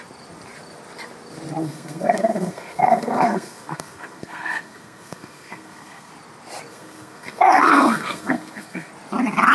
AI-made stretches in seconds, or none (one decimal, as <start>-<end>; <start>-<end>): 1.6-6.1; 6.7-8.9